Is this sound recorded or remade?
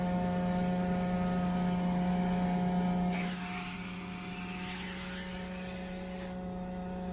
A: recorded